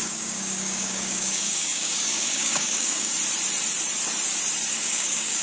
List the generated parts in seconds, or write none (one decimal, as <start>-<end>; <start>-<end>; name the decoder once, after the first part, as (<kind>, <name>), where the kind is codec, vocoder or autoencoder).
0.0-3.1 (codec, DAC); 4.7-5.4